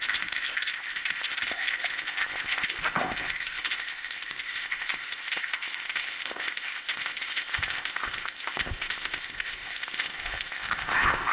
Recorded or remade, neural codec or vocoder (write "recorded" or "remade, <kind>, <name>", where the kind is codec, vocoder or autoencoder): remade, codec, ZipCodec